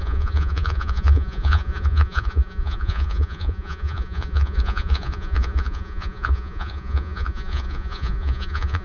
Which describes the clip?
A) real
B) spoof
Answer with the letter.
B